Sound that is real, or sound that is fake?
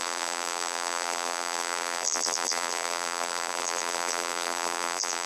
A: fake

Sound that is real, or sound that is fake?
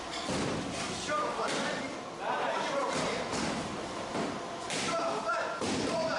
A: fake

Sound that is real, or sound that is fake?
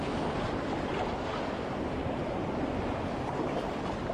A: real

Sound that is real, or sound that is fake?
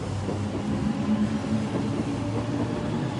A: real